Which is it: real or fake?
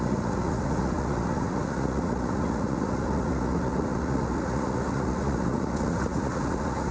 fake